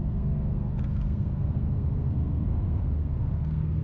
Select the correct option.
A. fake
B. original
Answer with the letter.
A